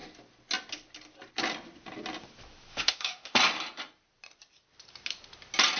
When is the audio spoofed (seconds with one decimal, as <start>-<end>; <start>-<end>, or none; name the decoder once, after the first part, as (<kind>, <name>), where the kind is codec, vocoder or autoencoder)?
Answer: 2.7-3.4 (autoencoder, DAC-VAE)